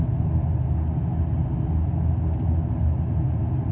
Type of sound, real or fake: real